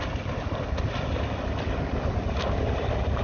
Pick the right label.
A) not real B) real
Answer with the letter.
B